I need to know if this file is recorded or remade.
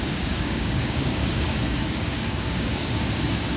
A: remade